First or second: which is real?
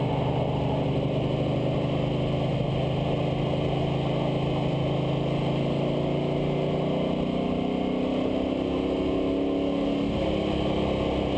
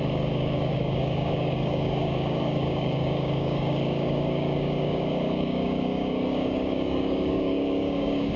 first